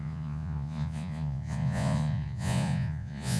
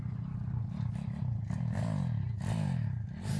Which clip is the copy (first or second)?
first